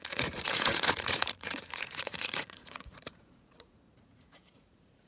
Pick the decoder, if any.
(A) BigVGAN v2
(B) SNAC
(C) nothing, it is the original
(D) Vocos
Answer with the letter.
D